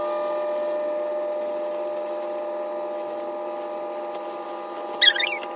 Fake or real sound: real